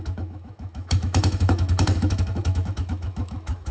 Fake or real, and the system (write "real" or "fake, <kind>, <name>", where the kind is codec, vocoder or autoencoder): fake, autoencoder, DAC-VAE